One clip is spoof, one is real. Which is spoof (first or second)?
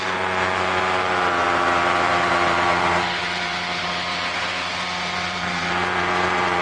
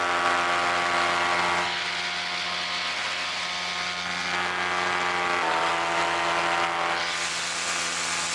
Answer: first